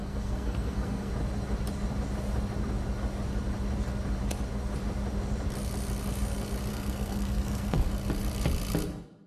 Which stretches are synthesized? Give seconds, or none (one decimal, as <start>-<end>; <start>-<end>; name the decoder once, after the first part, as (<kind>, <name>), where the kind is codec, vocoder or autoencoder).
0.0-1.1 (codec, SNAC); 6.7-7.9